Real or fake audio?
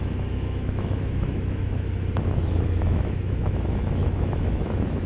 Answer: fake